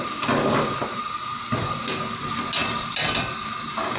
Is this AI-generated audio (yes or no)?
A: no